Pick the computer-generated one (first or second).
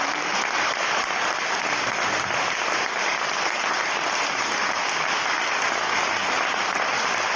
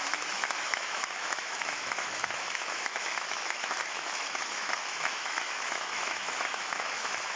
second